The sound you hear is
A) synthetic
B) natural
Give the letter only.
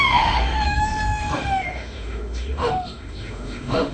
A